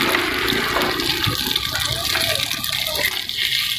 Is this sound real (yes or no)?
yes